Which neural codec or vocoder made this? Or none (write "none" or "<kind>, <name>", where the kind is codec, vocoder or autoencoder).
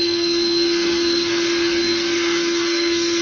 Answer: codec, SNAC